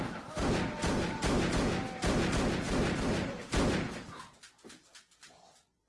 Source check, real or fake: fake